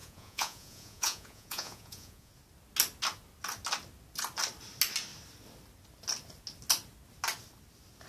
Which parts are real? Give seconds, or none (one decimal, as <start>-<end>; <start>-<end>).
2.3-8.1